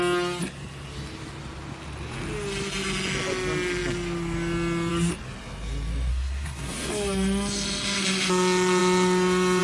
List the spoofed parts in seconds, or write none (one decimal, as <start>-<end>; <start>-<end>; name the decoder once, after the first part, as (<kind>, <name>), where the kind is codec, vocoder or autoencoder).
6.1-6.9 (codec, SNAC)